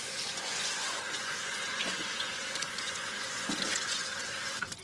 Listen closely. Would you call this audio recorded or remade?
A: remade